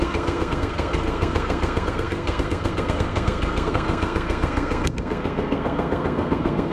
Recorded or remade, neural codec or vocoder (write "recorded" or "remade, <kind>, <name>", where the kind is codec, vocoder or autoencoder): remade, codec, SNAC